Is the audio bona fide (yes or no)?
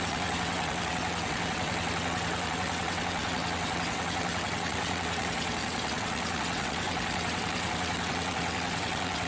no